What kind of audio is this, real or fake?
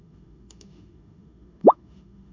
fake